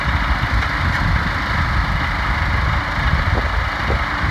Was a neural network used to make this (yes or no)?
no